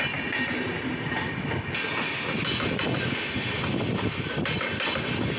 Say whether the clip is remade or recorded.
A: recorded